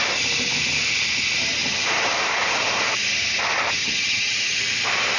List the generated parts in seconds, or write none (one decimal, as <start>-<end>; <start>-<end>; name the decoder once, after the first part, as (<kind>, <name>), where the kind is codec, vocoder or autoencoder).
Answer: 3.8-4.6 (vocoder, HiFi-GAN)